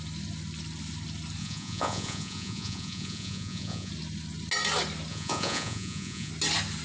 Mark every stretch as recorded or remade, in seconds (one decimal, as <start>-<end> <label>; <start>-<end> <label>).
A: 0.0-1.4 recorded; 1.4-3.9 remade; 3.9-5.1 recorded; 5.1-6.3 remade; 6.3-6.8 recorded